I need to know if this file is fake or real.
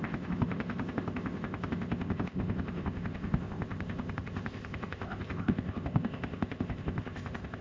fake